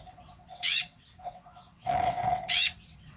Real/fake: fake